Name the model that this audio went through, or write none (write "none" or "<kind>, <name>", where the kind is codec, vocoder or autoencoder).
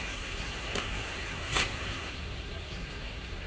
codec, SNAC